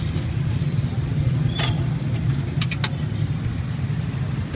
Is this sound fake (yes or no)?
no